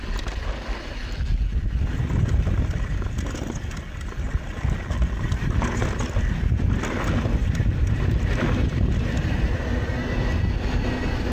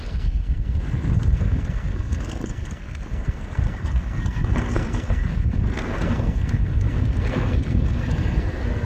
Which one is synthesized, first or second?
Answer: second